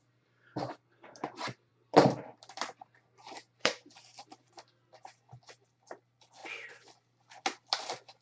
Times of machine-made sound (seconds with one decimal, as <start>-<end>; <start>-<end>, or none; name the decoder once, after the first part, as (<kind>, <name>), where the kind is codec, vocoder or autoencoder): 1.7-4.5 (vocoder, BigVGAN v2)